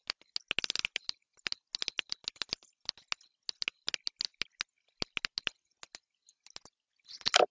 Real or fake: real